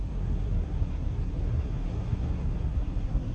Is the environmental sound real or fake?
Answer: fake